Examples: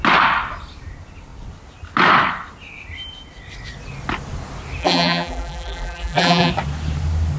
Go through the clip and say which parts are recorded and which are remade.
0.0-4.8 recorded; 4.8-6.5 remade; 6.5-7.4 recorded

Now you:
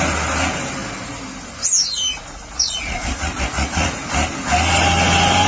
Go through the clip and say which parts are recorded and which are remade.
0.0-2.1 recorded; 2.1-3.9 remade; 3.9-5.5 recorded

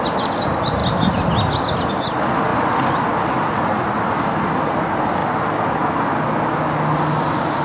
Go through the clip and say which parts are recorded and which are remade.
0.0-7.6 recorded

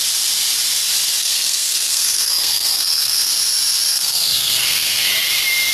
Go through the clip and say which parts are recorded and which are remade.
0.0-1.2 recorded; 1.2-3.3 remade; 3.3-3.9 recorded; 3.9-5.1 remade; 5.1-5.7 recorded

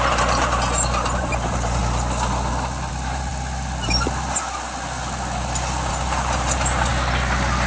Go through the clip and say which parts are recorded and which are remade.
0.0-1.8 remade; 1.8-2.9 recorded; 2.9-3.3 remade; 3.3-5.9 recorded; 5.9-6.9 remade; 6.9-7.7 recorded

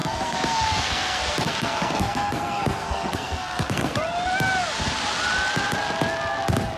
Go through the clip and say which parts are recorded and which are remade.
0.0-4.0 remade; 4.0-6.8 recorded

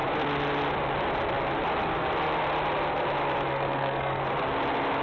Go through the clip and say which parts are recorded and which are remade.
0.0-3.5 recorded; 3.5-4.2 remade; 4.2-5.0 recorded